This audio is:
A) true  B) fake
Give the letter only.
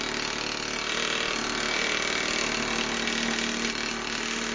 A